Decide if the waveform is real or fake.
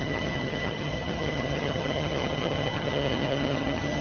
fake